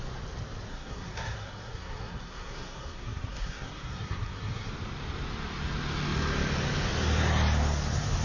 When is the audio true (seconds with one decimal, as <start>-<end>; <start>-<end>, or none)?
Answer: 0.0-0.7; 4.7-8.2